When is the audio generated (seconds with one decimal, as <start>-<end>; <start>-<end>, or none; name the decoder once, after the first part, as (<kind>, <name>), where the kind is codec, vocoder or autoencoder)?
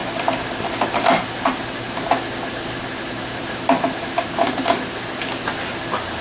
none